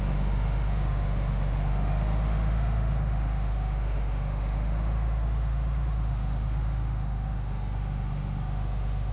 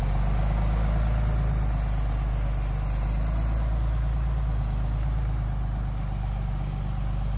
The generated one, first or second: first